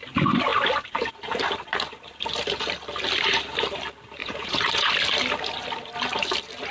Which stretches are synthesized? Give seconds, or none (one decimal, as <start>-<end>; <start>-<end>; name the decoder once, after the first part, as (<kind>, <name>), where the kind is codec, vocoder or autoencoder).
4.2-4.9 (vocoder, Vocos)

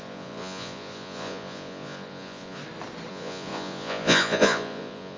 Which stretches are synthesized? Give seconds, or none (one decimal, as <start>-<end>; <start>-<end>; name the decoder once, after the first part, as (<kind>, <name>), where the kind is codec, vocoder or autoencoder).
0.0-2.6 (vocoder, Vocos); 3.1-5.2

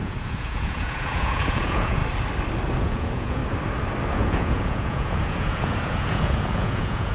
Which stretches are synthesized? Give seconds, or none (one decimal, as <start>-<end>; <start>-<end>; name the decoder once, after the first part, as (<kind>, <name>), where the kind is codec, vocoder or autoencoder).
0.0-2.0 (vocoder, Vocos); 2.8-3.4; 4.1-7.1

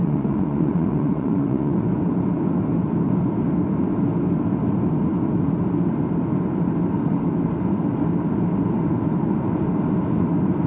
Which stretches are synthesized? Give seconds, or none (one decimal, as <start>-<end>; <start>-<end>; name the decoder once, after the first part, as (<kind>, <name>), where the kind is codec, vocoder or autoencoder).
0.0-2.0 (vocoder, Vocos)

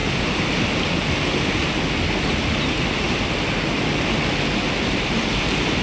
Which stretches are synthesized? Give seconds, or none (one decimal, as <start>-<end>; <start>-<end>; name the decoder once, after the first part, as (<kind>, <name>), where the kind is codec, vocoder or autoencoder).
none

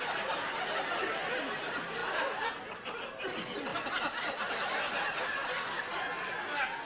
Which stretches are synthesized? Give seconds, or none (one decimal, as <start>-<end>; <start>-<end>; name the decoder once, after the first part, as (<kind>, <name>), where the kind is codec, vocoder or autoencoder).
none

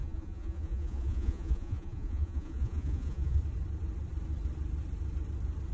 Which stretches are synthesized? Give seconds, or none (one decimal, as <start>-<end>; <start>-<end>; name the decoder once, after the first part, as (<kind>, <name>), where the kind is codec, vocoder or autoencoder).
0.0-3.4 (vocoder, Vocos)